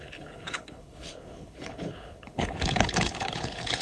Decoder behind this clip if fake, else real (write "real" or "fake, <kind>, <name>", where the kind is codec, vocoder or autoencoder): fake, codec, HILCodec